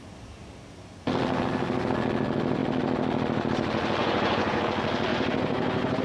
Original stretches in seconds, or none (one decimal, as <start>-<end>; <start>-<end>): 0.0-4.0; 4.6-5.1